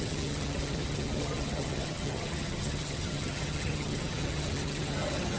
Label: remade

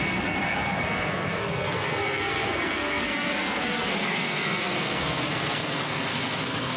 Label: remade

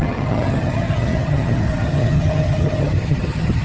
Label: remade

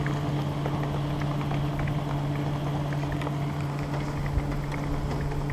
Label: recorded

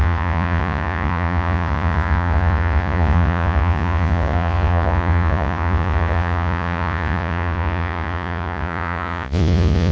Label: remade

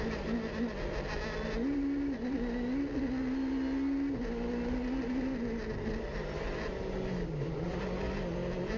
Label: recorded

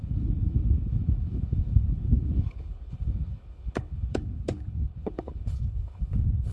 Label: remade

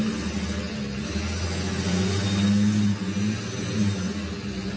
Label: recorded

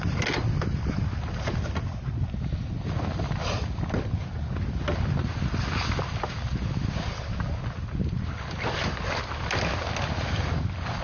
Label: recorded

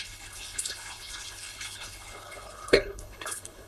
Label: remade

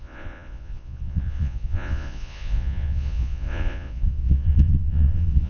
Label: remade